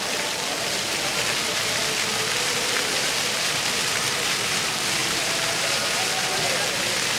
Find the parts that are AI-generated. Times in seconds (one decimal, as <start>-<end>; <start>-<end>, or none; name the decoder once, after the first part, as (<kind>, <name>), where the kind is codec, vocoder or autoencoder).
5.0-6.0 (vocoder, BigVGAN v2)